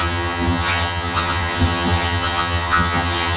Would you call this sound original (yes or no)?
no